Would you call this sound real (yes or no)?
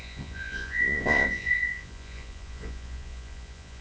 no